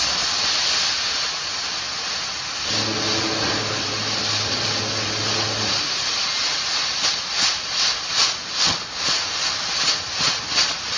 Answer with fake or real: real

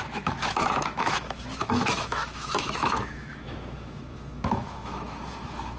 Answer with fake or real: fake